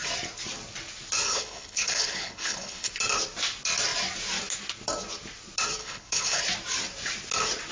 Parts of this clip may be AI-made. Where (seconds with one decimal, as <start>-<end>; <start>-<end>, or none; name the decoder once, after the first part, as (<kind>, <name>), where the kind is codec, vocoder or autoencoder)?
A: 1.3-2.9 (codec, HILCodec); 5.8-6.4